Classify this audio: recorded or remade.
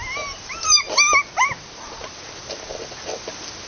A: recorded